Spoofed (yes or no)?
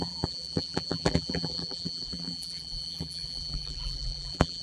yes